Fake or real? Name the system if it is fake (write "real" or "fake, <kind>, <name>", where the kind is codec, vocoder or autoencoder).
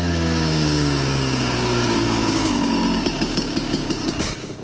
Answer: fake, codec, DAC